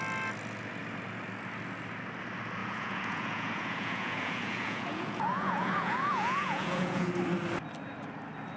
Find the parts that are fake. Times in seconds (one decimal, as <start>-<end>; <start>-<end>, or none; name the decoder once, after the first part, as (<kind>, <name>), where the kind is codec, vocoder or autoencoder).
2.6-7.1 (vocoder, Vocos)